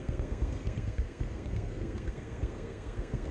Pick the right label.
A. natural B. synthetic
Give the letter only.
B